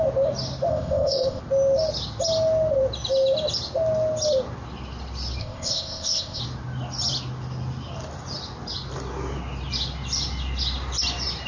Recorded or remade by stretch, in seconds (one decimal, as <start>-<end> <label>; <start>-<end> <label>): 0.0-0.7 recorded; 0.7-1.4 remade; 1.4-5.4 recorded; 5.4-6.4 remade; 6.4-11.5 recorded